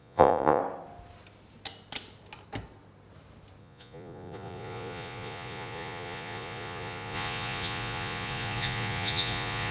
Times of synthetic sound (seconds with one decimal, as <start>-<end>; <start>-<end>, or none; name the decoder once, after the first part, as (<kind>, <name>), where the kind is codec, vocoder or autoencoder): 0.0-0.6 (vocoder, Vocos); 3.6-9.7